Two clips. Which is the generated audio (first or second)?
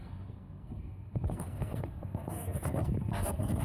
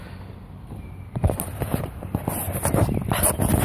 first